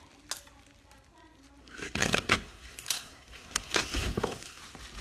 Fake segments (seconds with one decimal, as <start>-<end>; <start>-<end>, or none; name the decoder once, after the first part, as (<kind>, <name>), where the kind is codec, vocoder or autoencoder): 1.6-4.6 (codec, SNAC)